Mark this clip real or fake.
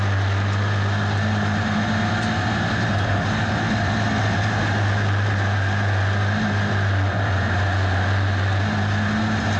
real